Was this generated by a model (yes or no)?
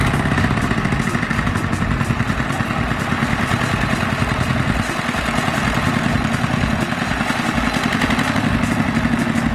no